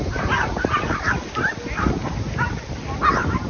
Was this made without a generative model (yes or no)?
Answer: yes